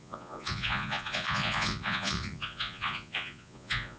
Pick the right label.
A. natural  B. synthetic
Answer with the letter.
B